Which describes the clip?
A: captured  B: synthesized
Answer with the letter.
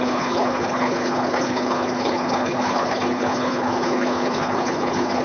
B